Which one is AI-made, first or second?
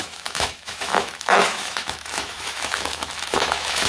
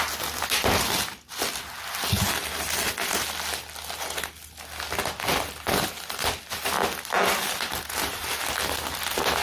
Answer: first